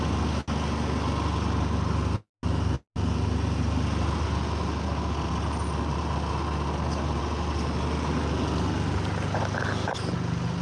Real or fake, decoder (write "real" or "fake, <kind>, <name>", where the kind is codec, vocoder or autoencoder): real